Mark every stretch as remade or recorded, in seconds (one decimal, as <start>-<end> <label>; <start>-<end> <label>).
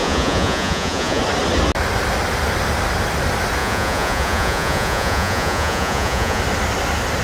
0.0-1.2 remade; 1.2-3.6 recorded; 3.6-6.4 remade; 6.4-7.2 recorded